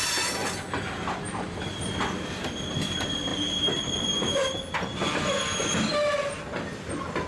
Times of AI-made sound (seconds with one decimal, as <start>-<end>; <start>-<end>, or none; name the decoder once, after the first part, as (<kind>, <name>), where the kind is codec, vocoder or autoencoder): none